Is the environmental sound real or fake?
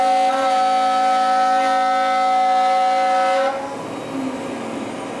real